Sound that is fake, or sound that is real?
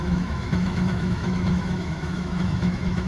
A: fake